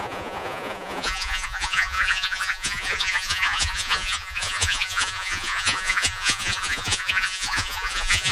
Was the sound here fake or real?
fake